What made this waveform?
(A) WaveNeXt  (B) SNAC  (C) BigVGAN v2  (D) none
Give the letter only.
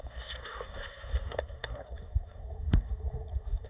B